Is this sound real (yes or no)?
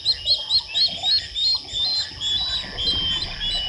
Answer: yes